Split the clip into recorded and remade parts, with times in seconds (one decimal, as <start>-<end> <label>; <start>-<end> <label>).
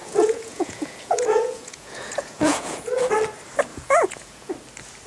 0.0-3.1 remade; 3.1-3.7 recorded; 3.7-4.5 remade; 4.5-5.1 recorded